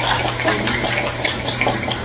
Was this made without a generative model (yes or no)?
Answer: yes